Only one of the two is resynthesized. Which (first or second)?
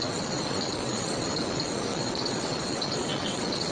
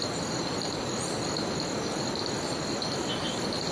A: first